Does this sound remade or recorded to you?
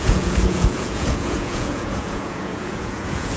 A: remade